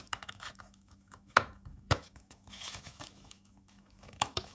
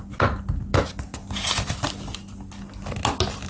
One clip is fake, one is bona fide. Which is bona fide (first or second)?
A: second